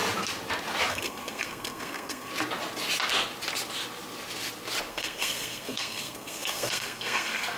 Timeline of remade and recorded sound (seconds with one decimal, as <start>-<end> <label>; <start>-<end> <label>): 0.0-0.9 recorded; 0.9-2.3 remade; 2.3-4.9 recorded; 4.9-7.6 remade